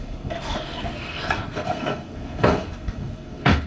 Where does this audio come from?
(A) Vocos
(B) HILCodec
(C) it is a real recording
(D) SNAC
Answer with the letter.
D